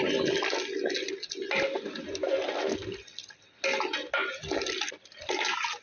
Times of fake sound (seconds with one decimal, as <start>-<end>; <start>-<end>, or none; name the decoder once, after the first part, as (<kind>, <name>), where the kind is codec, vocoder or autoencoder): none